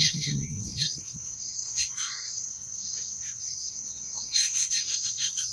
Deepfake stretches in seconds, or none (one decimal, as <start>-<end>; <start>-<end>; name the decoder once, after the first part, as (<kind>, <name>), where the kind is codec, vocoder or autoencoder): 0.0-5.5 (codec, SNAC)